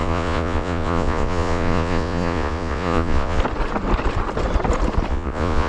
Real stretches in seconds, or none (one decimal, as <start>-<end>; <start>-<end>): 3.4-5.1